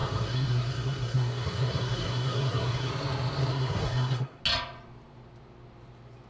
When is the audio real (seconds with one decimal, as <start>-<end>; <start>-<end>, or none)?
2.9-3.5; 4.4-6.3